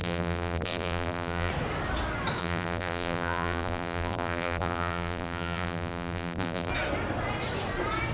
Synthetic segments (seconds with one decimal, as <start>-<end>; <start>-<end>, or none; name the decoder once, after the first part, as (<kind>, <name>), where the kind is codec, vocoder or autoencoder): 0.0-1.5 (vocoder, BigVGAN v2); 2.4-6.7